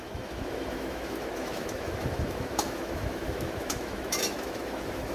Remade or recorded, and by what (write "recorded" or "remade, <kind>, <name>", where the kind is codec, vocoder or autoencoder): remade, autoencoder, DAC-VAE